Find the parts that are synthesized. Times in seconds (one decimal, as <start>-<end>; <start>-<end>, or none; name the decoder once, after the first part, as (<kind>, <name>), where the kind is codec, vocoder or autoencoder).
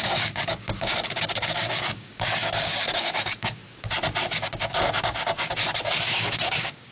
0.0-3.6 (codec, DAC); 6.0-6.9